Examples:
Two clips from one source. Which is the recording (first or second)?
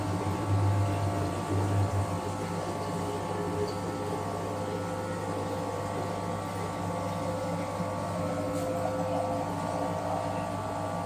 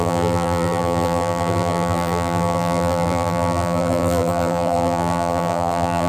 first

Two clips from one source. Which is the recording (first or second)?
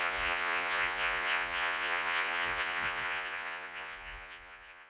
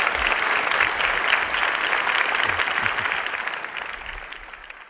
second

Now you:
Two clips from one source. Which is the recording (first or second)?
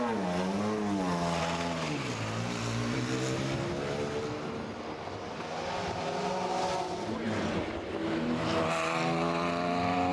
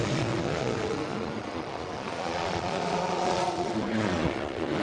first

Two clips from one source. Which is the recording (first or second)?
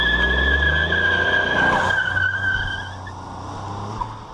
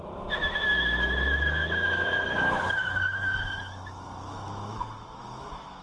first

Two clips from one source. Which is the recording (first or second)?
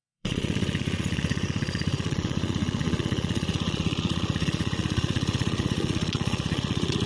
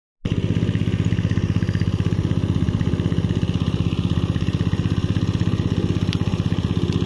second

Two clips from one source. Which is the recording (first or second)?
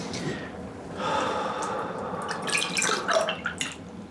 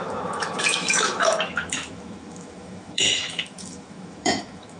first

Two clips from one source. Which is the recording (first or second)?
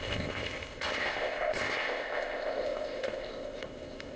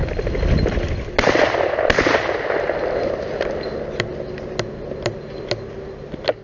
second